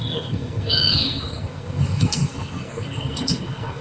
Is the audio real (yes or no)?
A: no